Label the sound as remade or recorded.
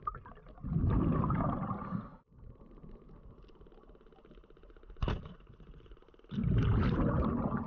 recorded